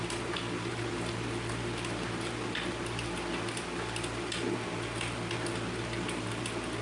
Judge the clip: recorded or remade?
recorded